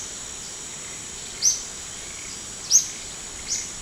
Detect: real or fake real